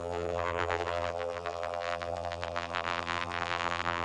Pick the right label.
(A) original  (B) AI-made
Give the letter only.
B